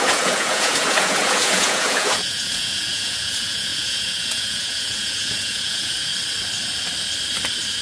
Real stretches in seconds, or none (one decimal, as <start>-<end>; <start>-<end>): 6.1-7.8